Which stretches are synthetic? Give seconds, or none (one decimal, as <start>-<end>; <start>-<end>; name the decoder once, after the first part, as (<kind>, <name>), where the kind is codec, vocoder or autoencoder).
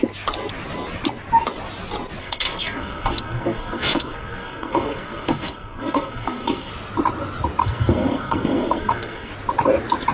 2.2-6.7 (codec, SNAC); 7.6-9.3